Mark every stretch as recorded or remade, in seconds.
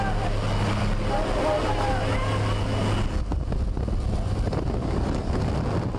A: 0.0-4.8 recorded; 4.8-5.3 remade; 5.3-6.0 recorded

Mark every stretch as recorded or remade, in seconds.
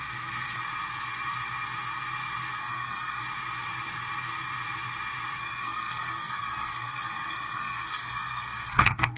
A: 0.0-2.6 recorded; 2.6-3.2 remade; 3.2-5.4 recorded; 5.4-9.2 remade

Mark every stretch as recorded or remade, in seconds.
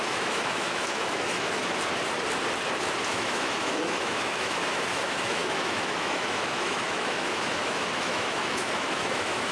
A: 0.0-1.6 remade; 1.6-3.1 recorded; 3.1-9.5 remade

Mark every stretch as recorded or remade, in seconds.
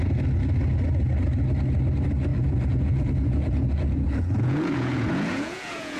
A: 0.0-2.3 recorded; 2.3-6.0 remade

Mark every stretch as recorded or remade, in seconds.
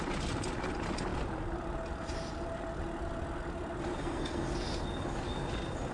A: 0.0-4.0 recorded; 4.0-4.5 remade; 4.5-5.9 recorded